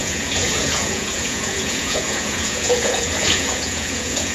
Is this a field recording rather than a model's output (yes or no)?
no